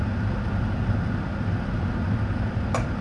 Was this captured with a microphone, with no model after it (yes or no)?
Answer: yes